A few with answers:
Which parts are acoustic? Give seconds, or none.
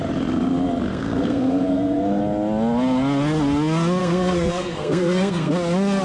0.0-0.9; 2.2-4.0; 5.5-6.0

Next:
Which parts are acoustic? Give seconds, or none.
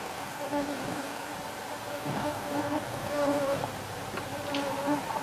1.3-1.9; 3.6-5.2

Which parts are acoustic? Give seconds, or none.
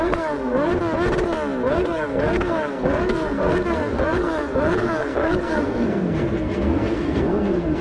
0.7-1.7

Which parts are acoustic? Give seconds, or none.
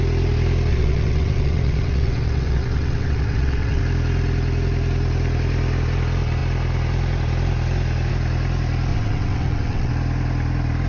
0.0-0.7; 3.8-8.9; 9.9-10.9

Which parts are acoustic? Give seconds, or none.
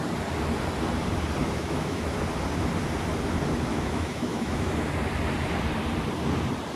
0.0-1.4; 2.2-3.7; 4.7-6.8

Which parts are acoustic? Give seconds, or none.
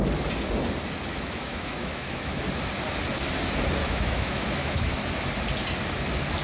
0.0-1.1; 2.4-3.8; 5.0-6.4